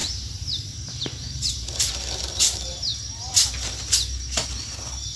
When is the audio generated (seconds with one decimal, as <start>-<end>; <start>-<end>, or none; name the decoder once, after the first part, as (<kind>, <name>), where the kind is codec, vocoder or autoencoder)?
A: 0.0-1.9 (vocoder, BigVGAN v2)